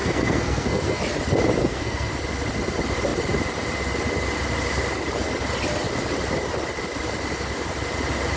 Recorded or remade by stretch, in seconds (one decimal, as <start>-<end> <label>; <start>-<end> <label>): 0.0-1.0 remade; 1.0-1.6 recorded; 1.6-2.1 remade; 2.1-8.4 recorded